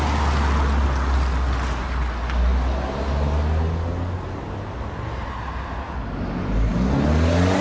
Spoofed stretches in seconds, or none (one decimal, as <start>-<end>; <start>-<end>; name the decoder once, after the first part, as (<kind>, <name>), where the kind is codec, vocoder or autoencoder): none